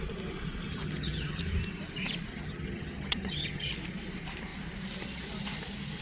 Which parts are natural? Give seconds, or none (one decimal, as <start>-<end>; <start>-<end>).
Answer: 0.0-0.7; 1.4-2.3; 3.7-6.0